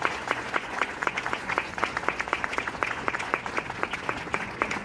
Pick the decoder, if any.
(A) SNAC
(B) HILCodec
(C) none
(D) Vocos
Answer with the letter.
D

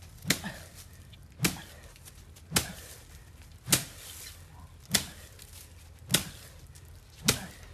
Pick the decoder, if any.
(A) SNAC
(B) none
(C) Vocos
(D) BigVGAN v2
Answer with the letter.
B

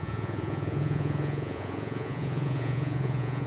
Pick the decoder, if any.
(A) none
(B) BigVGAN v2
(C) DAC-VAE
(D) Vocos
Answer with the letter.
D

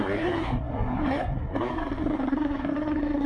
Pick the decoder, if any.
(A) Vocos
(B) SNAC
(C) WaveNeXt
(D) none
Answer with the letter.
B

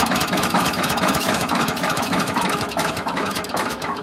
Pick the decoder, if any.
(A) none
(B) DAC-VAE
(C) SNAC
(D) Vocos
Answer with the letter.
B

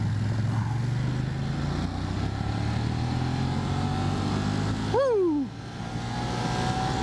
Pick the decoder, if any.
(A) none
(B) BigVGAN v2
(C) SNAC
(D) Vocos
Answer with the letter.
A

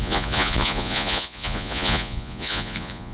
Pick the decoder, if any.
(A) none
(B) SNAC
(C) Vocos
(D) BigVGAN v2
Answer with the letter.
C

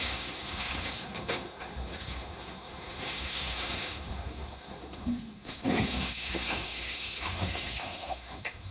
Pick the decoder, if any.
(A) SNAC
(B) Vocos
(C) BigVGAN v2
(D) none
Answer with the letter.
A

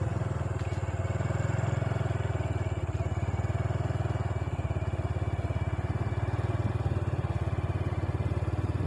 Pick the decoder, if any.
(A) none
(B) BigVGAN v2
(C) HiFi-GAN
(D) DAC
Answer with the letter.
A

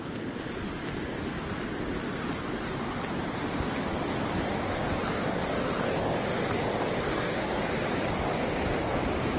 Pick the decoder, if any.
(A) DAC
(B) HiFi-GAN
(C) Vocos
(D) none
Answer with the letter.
D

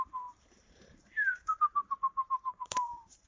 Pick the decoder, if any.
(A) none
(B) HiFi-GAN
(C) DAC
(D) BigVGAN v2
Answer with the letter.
D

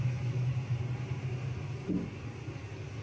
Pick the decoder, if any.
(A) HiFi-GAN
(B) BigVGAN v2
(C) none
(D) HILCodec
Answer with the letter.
B